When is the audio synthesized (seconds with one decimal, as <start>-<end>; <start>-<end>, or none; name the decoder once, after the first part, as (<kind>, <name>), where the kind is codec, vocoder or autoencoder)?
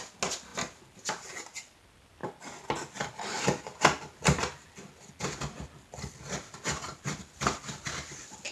none